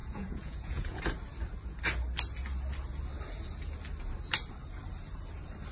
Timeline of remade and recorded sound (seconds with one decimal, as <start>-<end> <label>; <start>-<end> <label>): 0.0-1.0 remade; 1.0-5.7 recorded